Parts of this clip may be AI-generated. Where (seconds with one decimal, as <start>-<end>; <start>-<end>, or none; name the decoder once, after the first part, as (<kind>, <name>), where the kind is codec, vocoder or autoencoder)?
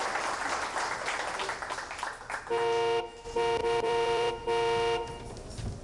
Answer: 3.6-4.3 (vocoder, BigVGAN v2)